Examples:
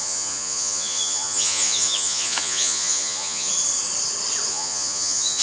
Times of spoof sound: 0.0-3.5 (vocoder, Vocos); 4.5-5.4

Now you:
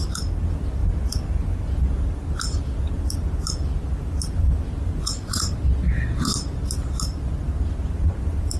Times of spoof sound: 5.0-5.5 (vocoder, Vocos)

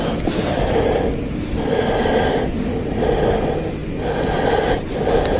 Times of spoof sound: none

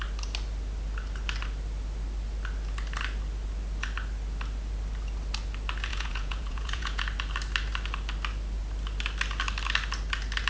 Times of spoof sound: 5.9-7.0 (vocoder, Vocos)

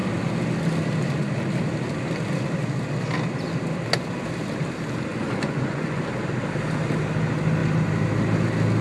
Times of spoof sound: 5.1-6.0 (vocoder, Vocos)

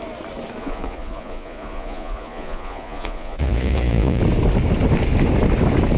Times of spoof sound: 0.6-4.2 (vocoder, Vocos)